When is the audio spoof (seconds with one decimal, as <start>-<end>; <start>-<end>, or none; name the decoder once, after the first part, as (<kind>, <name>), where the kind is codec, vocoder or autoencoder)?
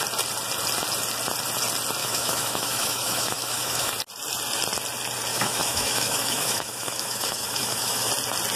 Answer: 2.0-3.9 (autoencoder, DAC-VAE); 5.3-8.1